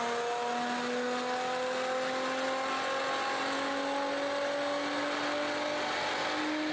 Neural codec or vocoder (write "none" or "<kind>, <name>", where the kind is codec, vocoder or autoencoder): none